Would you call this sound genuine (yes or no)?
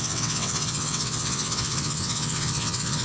no